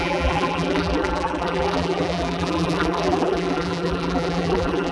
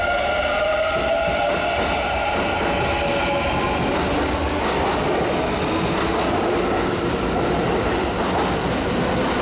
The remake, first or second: first